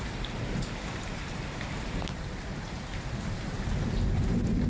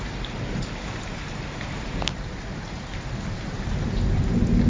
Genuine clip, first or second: second